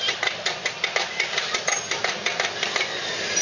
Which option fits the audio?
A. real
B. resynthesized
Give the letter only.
A